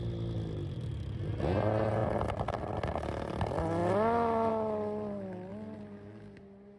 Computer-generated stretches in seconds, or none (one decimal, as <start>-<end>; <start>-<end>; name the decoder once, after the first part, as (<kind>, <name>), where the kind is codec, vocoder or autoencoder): none